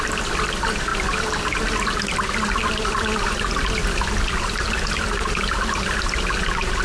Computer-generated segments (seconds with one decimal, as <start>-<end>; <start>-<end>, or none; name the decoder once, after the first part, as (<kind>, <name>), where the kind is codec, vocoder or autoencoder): none